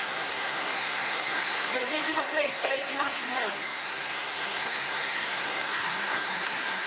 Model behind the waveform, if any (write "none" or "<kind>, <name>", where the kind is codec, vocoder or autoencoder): codec, SNAC